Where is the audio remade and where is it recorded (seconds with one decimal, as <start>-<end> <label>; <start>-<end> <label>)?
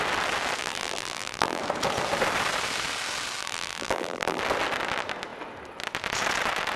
0.0-0.6 recorded; 0.6-1.6 remade; 1.6-3.4 recorded; 3.4-4.4 remade; 4.4-6.8 recorded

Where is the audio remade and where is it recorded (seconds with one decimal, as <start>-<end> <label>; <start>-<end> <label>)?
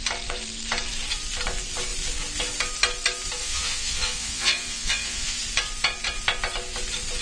0.0-3.4 recorded; 3.4-5.4 remade; 5.4-7.2 recorded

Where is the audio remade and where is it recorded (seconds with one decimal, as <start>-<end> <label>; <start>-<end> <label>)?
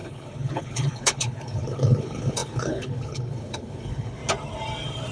0.0-4.2 remade; 4.2-5.1 recorded